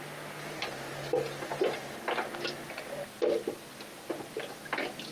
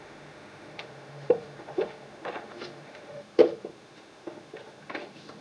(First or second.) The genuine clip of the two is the first